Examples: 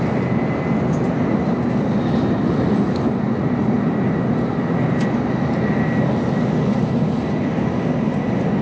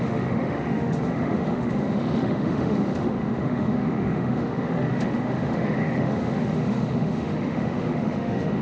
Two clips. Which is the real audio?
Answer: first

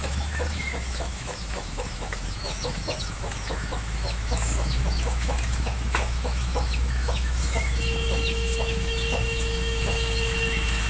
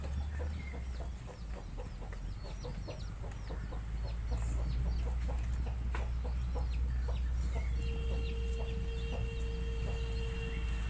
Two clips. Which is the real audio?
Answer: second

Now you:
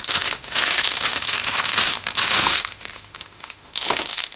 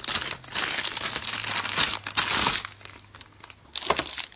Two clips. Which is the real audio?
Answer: second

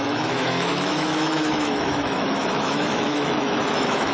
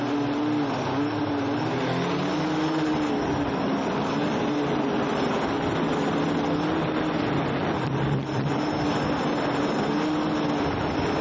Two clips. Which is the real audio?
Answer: second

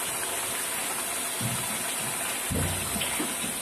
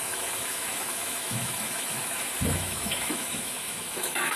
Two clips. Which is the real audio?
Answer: first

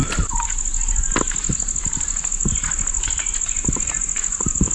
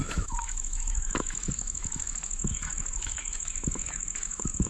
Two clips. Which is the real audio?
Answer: first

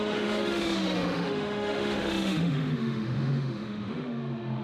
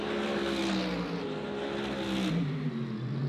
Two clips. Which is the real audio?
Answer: second